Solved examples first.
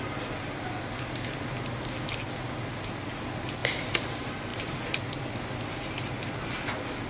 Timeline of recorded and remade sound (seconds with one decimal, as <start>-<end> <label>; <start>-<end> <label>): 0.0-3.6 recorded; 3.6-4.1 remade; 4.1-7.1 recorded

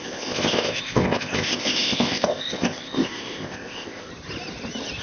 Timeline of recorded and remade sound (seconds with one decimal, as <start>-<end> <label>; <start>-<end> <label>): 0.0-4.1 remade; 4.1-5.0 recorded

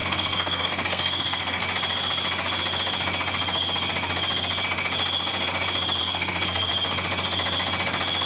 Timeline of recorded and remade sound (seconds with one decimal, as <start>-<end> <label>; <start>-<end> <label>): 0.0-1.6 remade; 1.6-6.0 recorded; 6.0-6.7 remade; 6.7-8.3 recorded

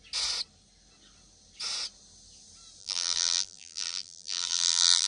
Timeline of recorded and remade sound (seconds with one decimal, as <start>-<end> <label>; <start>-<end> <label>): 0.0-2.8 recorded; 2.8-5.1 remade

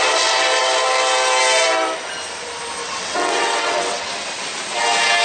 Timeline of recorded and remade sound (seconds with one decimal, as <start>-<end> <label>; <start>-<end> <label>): 0.0-2.8 recorded; 2.8-4.1 remade; 4.1-5.2 recorded

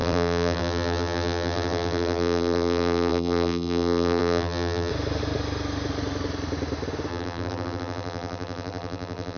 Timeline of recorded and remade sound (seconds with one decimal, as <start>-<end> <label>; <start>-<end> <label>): 0.0-4.9 remade; 4.9-7.1 recorded; 7.1-9.4 remade

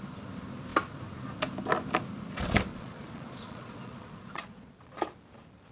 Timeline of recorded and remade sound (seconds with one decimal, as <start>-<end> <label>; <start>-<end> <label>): 0.0-2.7 recorded; 2.7-4.9 remade; 4.9-5.7 recorded